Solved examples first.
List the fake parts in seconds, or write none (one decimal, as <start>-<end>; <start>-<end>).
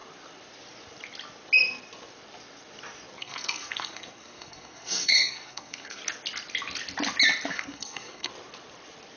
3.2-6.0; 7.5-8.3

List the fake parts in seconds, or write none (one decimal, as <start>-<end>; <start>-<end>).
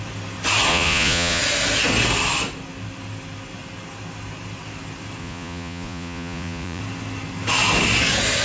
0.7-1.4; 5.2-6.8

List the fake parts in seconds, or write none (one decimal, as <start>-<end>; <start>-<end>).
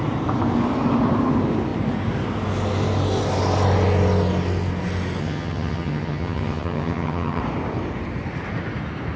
5.2-7.4